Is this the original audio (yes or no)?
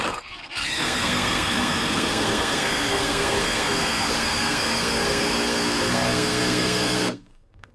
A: no